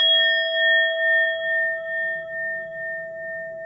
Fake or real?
fake